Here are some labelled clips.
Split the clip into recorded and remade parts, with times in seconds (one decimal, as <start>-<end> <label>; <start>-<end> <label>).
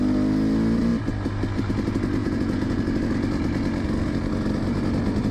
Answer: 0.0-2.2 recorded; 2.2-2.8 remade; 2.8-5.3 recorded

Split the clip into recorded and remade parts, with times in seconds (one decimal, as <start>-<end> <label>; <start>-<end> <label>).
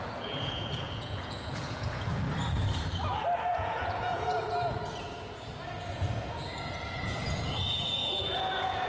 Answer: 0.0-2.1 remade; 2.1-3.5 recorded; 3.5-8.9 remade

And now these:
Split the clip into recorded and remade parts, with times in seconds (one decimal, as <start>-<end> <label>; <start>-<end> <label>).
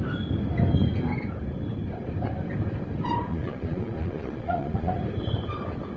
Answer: 0.0-3.3 recorded; 3.3-4.9 remade; 4.9-6.0 recorded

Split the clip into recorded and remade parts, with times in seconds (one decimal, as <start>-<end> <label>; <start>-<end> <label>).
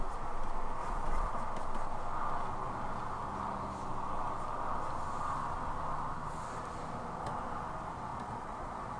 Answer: 0.0-0.8 recorded; 0.8-1.3 remade; 1.3-8.1 recorded; 8.1-9.0 remade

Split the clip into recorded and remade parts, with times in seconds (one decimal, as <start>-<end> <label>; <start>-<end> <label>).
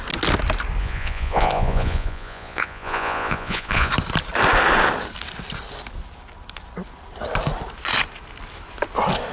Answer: 0.0-0.8 recorded; 0.8-3.9 remade; 3.9-9.3 recorded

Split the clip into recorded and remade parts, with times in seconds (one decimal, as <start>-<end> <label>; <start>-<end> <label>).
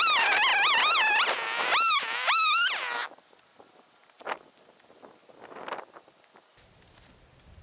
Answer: 0.0-7.6 recorded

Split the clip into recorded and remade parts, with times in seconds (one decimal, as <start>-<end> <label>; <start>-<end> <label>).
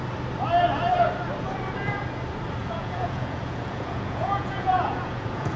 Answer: 0.0-2.6 recorded; 2.6-5.6 remade